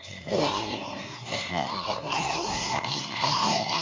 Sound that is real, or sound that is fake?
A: fake